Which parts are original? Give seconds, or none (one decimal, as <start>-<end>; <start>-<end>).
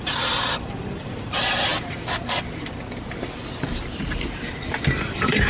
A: 1.7-5.0